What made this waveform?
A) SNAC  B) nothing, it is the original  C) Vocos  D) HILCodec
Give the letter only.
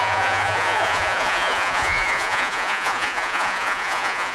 C